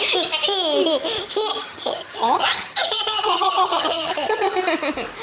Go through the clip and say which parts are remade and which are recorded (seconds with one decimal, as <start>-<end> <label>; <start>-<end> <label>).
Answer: 0.0-1.5 recorded; 1.5-4.6 remade; 4.6-5.2 recorded